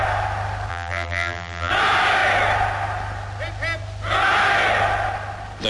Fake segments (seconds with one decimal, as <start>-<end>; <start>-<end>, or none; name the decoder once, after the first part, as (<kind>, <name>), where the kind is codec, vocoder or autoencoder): 0.7-1.7 (vocoder, BigVGAN v2)